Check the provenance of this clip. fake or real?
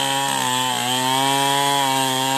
real